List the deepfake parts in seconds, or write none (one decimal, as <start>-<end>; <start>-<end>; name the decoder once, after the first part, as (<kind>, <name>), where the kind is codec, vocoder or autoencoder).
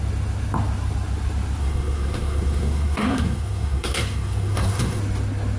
1.6-5.0 (codec, SNAC)